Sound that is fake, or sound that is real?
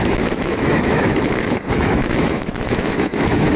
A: fake